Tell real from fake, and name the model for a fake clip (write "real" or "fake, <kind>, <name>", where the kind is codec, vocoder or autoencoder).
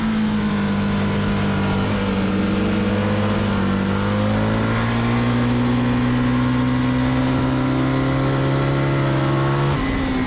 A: real